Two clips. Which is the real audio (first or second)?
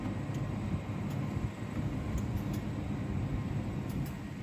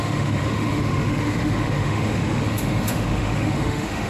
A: first